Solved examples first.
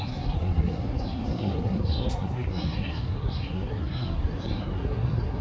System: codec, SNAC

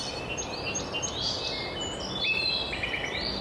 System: none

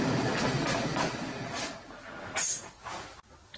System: none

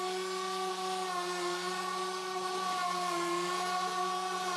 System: none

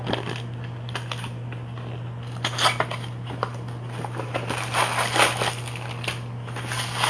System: none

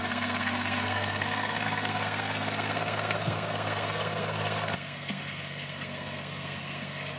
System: codec, SNAC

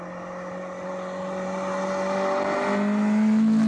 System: none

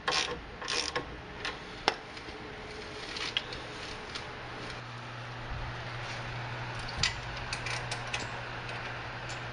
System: none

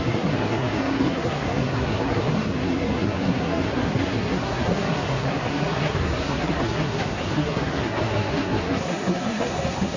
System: codec, SNAC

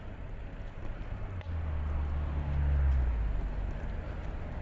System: none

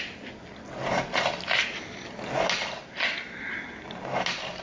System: none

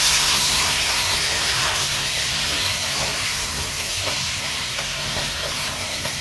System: codec, SNAC